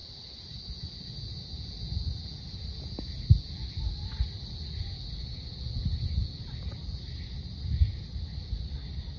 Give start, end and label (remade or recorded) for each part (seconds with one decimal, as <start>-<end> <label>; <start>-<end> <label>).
0.0-9.2 recorded